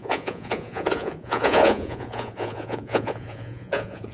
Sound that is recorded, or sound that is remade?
remade